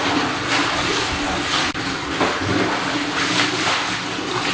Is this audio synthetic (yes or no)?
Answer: no